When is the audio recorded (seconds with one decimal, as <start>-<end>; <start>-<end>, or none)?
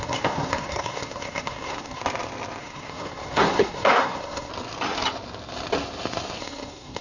2.0-2.6; 4.5-6.4